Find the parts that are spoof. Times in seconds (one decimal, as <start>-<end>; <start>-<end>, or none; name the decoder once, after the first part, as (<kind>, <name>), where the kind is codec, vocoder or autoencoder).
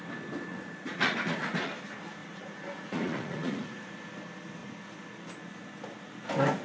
0.5-1.7 (vocoder, Vocos); 2.2-3.9